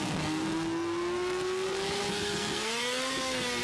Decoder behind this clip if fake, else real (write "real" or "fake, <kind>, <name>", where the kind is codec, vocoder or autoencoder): fake, codec, SNAC